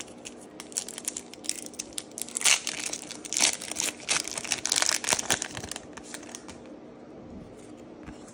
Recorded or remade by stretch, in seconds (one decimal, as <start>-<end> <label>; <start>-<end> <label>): 0.0-8.3 recorded